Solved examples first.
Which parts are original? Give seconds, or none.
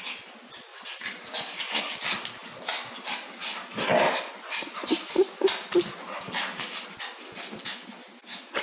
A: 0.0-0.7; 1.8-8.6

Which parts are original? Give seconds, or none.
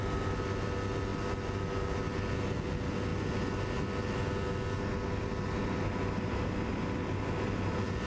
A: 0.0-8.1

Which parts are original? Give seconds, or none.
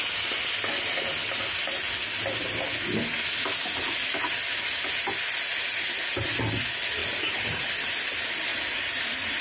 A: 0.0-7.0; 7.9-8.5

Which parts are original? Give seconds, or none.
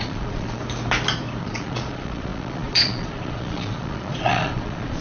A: 0.6-1.4